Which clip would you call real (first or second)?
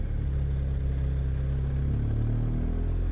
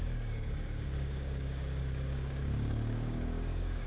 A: first